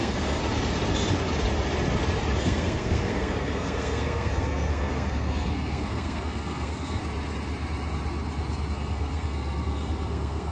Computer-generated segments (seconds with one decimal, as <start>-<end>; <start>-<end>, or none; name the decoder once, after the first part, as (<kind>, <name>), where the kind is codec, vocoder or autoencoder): 0.0-0.4 (codec, SNAC); 2.4-7.0; 8.7-10.5